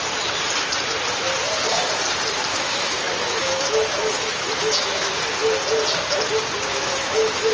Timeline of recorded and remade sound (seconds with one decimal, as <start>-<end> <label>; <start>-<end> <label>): 0.0-2.5 recorded; 2.5-5.2 remade; 5.2-6.7 recorded; 6.7-7.5 remade